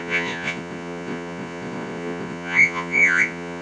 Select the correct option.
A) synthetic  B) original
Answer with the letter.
A